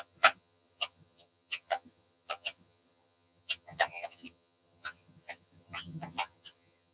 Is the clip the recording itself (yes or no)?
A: no